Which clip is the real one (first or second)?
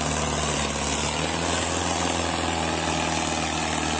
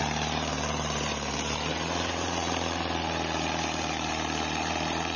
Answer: first